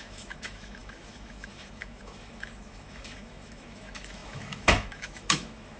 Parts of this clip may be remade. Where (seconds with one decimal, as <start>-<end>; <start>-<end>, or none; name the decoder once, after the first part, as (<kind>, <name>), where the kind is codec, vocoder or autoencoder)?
0.0-5.8 (autoencoder, DAC-VAE)